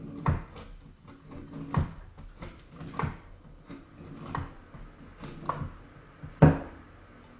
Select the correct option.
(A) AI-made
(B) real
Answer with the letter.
B